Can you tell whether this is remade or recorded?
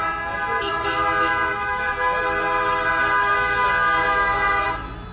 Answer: recorded